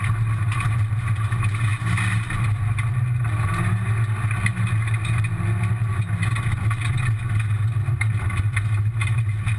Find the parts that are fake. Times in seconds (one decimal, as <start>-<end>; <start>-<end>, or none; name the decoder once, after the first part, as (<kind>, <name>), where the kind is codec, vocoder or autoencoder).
none